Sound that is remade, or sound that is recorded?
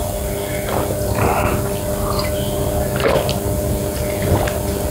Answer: recorded